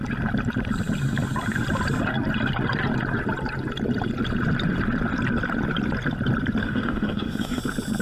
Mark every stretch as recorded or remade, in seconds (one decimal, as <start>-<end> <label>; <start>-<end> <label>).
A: 0.0-6.6 recorded; 6.6-7.6 remade; 7.6-8.0 recorded